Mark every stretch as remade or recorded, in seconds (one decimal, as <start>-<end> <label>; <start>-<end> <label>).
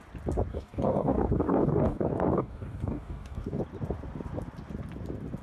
0.0-0.5 recorded; 0.5-3.6 remade; 3.6-5.4 recorded